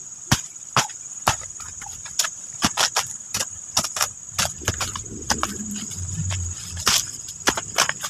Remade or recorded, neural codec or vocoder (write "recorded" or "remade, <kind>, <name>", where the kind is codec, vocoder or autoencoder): recorded